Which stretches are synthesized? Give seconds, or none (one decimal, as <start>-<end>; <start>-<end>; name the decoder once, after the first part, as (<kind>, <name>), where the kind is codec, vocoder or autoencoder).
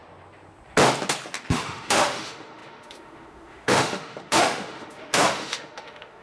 1.5-6.2 (autoencoder, DAC-VAE)